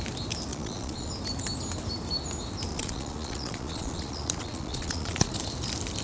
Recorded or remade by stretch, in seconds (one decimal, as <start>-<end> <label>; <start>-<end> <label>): 0.0-0.5 recorded; 0.5-1.1 remade; 1.1-2.7 recorded; 2.7-5.3 remade; 5.3-6.0 recorded